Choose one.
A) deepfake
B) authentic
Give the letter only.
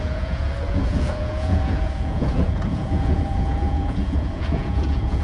A